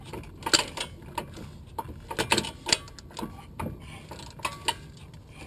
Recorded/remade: recorded